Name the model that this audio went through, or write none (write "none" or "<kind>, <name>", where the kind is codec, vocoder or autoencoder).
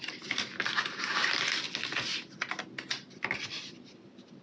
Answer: none